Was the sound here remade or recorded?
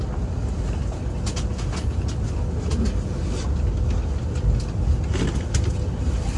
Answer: recorded